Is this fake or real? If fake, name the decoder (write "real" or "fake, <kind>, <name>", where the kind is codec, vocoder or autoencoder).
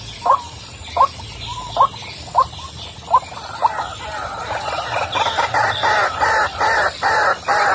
real